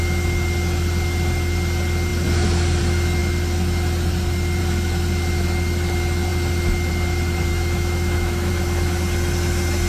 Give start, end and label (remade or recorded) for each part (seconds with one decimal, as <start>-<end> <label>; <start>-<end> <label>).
0.0-7.5 recorded; 7.5-8.5 remade; 8.5-9.9 recorded